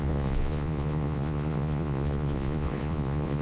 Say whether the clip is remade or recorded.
remade